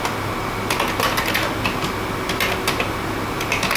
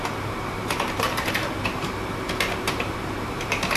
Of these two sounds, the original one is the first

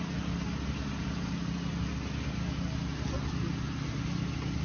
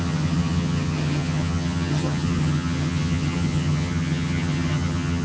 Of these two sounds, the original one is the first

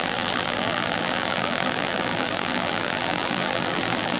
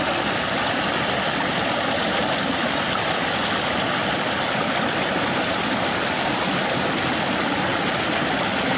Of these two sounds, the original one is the second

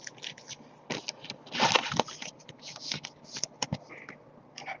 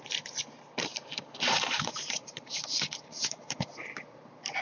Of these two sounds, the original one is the first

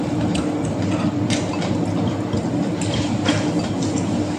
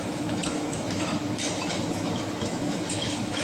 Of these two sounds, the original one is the first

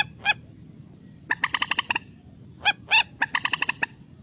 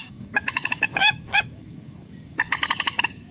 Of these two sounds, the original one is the first